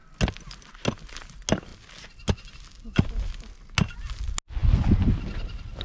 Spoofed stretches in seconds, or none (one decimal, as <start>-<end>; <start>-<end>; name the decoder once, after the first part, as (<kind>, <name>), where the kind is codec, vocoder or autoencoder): none